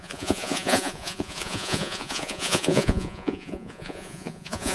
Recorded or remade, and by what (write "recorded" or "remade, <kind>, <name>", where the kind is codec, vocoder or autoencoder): remade, vocoder, Vocos